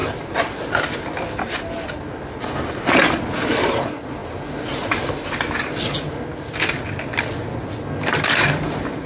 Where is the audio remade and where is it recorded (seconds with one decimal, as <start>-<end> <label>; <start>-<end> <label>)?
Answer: 0.0-9.1 recorded